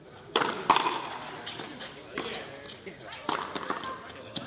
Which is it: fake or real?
fake